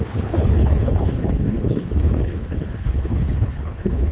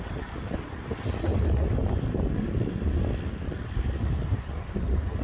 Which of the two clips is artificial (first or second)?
first